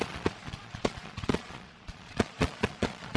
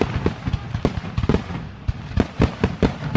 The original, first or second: second